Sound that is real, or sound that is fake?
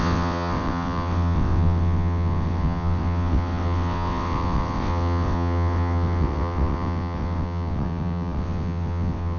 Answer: fake